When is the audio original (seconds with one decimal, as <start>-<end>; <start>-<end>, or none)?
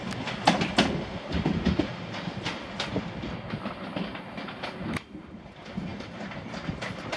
0.0-7.2